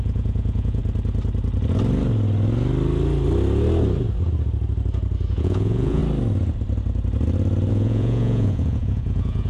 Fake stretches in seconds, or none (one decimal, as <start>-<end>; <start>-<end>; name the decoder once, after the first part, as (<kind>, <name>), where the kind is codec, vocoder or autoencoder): 0.0-0.8 (vocoder, Vocos); 5.3-6.0; 7.7-9.5